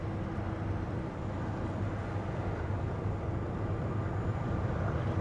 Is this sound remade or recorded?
recorded